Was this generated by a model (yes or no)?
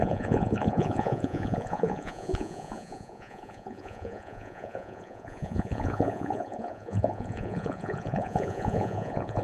yes